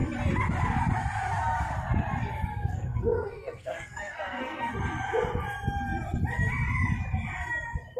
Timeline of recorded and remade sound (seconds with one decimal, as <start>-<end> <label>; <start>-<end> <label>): 0.0-2.5 recorded; 2.5-4.7 remade; 4.7-8.0 recorded